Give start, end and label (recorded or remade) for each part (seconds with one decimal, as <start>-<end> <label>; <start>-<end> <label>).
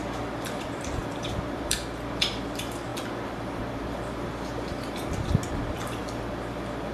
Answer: 0.0-2.9 remade; 2.9-5.5 recorded; 5.5-6.0 remade; 6.0-6.9 recorded